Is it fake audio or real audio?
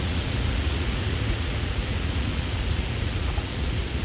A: fake